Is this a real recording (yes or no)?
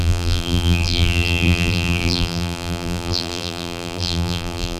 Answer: no